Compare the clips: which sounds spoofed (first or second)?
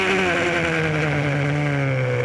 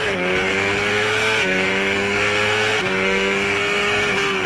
second